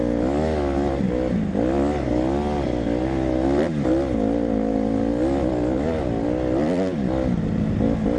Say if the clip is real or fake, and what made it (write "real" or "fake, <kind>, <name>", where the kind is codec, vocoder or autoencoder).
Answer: real